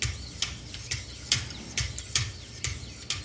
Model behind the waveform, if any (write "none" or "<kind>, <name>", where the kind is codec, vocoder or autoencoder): none